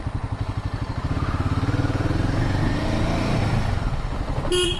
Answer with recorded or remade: recorded